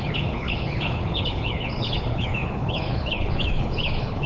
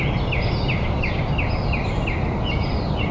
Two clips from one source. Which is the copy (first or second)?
first